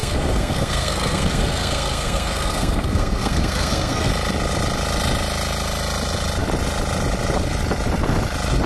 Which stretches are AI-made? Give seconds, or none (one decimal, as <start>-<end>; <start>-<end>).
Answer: 0.0-4.1